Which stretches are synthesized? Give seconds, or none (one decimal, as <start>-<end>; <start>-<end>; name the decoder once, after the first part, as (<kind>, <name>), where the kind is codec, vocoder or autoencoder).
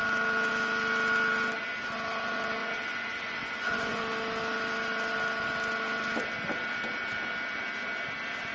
2.6-4.0 (vocoder, Vocos)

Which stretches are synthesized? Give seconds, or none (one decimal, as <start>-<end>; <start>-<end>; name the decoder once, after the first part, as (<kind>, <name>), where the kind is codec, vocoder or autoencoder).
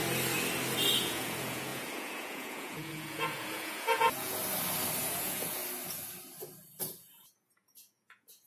1.0-4.4 (vocoder, Vocos); 5.0-5.6; 6.8-8.5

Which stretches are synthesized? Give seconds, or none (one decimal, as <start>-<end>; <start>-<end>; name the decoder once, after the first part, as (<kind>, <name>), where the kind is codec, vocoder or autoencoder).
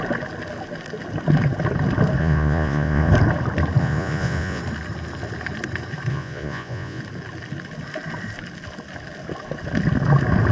2.2-3.1 (vocoder, Vocos); 3.8-4.6; 6.1-7.0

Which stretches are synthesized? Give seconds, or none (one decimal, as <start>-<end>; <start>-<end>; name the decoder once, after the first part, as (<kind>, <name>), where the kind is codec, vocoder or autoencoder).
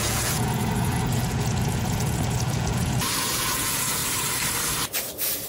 0.0-4.0 (vocoder, Vocos); 5.1-5.5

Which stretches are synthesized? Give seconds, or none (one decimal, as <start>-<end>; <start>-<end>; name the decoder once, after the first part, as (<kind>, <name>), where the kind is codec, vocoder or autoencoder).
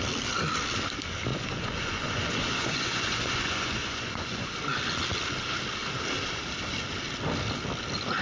1.3-4.5 (vocoder, Vocos)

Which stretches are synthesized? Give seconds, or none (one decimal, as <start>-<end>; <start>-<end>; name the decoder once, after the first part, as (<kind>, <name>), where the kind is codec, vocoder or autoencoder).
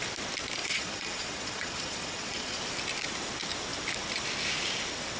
0.6-2.6 (vocoder, Vocos)